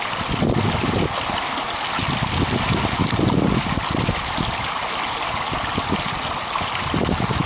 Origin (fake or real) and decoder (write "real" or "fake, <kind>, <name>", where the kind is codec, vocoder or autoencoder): real